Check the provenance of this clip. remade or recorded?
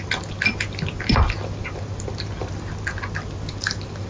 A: recorded